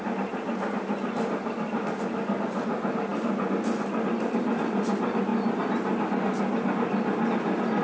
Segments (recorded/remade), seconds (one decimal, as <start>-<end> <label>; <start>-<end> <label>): 0.0-7.8 recorded